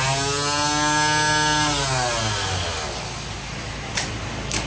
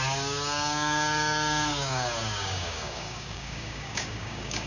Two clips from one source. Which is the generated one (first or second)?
second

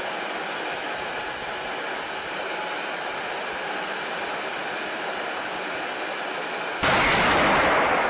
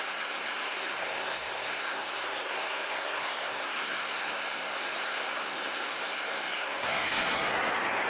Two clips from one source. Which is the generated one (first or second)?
second